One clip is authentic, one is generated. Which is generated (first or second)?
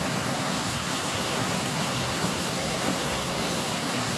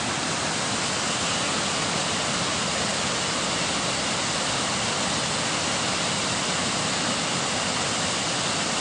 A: first